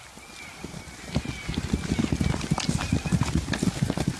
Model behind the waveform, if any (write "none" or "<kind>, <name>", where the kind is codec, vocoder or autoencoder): none